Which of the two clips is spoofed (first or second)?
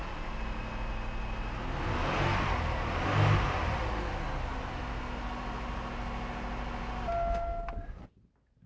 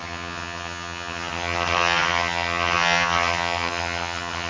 second